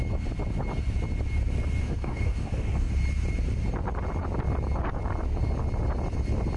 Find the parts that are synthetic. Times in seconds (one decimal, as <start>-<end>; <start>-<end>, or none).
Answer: 1.8-2.9